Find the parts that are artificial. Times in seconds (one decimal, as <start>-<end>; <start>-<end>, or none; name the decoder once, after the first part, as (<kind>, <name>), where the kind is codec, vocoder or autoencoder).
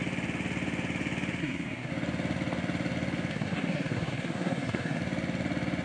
1.4-1.9 (codec, SNAC); 3.3-5.0